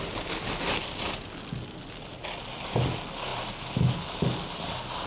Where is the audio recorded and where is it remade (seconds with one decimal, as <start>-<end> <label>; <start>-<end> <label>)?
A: 0.0-5.1 recorded

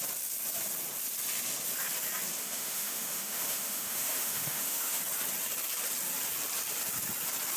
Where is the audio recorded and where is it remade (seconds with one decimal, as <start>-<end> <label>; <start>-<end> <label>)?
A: 0.0-2.4 recorded; 2.4-5.0 remade; 5.0-7.6 recorded

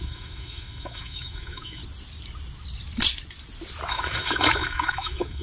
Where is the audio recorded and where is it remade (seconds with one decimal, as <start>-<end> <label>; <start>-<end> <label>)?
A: 0.0-1.8 remade; 1.8-3.9 recorded; 3.9-5.4 remade